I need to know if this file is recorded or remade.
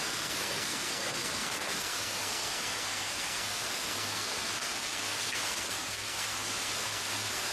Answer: remade